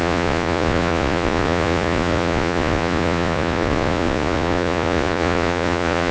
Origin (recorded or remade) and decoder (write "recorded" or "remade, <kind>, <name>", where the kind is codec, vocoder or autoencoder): remade, vocoder, Vocos